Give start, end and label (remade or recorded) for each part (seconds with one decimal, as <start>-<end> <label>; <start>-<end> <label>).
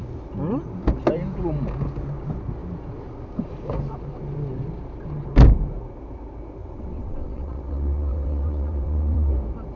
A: 0.0-6.6 recorded; 6.6-9.3 remade; 9.3-9.8 recorded